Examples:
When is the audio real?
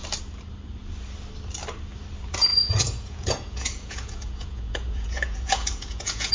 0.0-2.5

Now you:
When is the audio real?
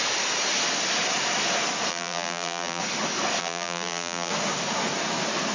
0.0-1.9; 2.8-3.4; 4.3-5.5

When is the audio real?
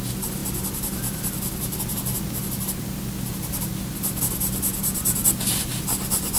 0.0-6.4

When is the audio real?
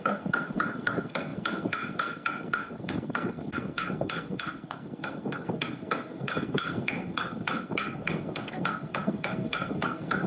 none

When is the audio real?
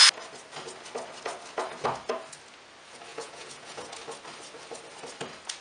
0.0-3.1; 3.9-5.6